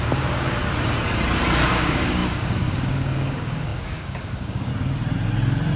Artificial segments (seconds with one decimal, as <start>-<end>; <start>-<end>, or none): 0.0-0.6; 1.7-4.7